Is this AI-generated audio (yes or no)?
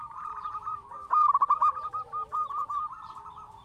yes